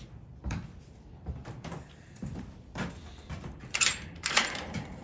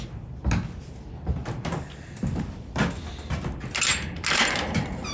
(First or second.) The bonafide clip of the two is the second